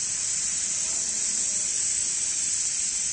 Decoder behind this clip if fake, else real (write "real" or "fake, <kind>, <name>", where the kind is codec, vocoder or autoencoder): real